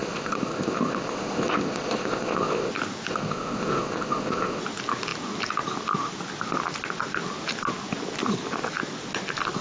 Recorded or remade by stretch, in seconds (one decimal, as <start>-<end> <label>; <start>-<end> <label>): 0.0-2.7 remade; 2.7-3.1 recorded; 3.1-4.6 remade; 4.6-9.6 recorded